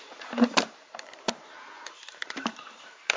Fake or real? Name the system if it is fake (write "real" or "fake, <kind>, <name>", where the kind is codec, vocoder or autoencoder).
fake, vocoder, BigVGAN v2